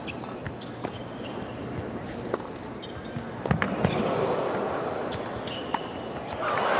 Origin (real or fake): real